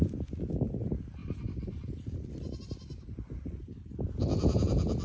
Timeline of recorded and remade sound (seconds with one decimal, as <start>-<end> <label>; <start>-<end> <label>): 0.0-1.2 recorded; 1.2-4.2 remade; 4.2-5.0 recorded